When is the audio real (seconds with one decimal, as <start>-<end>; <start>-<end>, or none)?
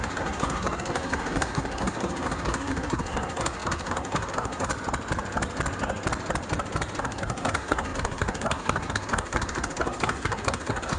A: 4.7-7.0